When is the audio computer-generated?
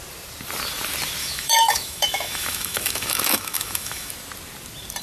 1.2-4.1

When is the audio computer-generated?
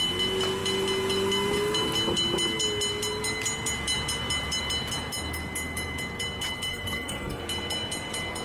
6.7-7.4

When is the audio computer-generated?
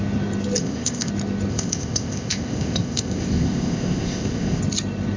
0.6-1.1; 1.5-4.6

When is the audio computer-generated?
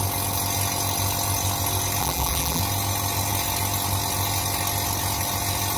2.0-2.6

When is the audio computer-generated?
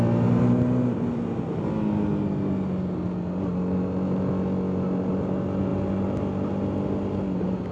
none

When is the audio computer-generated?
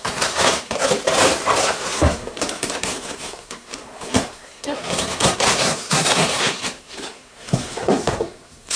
0.0-0.9; 1.6-8.8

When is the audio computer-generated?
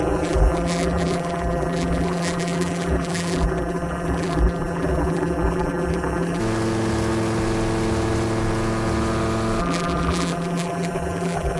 0.0-6.4; 9.6-11.6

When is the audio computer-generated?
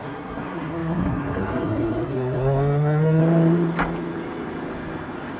0.0-3.2